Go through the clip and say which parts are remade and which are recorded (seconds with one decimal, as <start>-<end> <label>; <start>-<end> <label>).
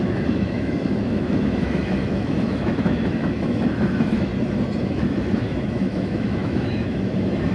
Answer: 0.0-4.3 remade; 4.3-4.8 recorded; 4.8-7.5 remade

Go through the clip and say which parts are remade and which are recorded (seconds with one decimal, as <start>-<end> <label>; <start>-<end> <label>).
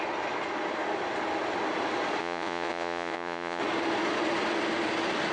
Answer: 0.0-2.2 recorded; 2.2-3.6 remade; 3.6-5.3 recorded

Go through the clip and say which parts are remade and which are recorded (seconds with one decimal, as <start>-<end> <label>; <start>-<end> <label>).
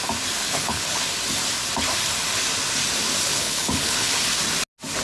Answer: 0.0-0.4 recorded; 0.4-1.0 remade; 1.0-3.3 recorded; 3.3-4.2 remade; 4.2-5.0 recorded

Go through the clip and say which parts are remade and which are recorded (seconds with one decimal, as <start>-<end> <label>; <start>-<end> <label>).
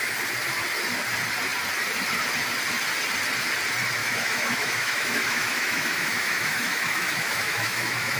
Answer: 0.0-4.0 recorded; 4.0-8.2 remade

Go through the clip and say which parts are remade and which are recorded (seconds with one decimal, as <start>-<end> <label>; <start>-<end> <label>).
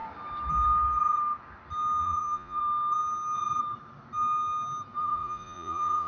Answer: 0.0-2.0 recorded; 2.0-2.6 remade; 2.6-5.0 recorded; 5.0-6.1 remade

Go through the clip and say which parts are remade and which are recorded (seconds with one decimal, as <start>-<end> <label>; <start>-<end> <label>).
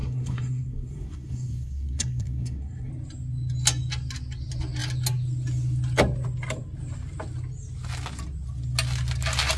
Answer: 0.0-2.9 remade; 2.9-9.6 recorded